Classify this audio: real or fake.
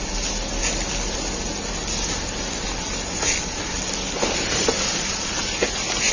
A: real